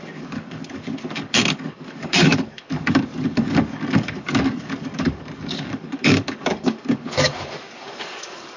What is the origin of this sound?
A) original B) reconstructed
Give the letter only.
B